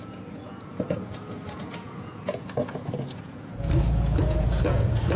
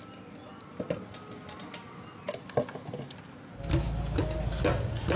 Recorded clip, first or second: second